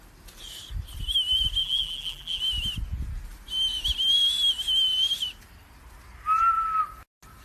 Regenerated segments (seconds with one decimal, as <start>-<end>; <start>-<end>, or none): 1.6-2.4